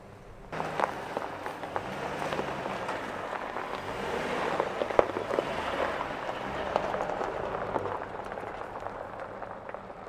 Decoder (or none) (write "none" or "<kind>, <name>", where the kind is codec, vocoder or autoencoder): none